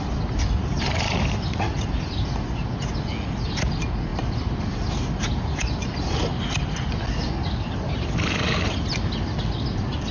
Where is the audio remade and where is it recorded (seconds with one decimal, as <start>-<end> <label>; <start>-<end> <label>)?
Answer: 0.0-10.1 recorded